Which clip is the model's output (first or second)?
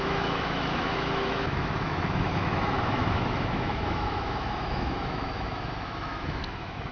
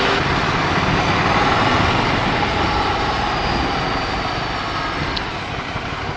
first